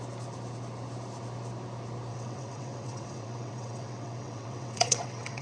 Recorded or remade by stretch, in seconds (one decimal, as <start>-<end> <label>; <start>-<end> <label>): 0.0-2.1 recorded; 2.1-5.4 remade